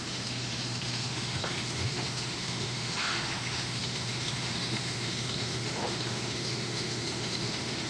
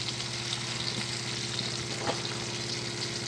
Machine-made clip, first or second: first